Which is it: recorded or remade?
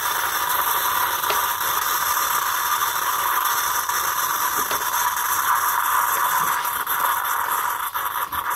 recorded